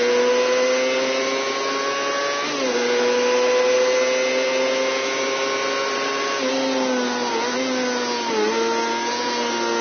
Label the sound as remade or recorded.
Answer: recorded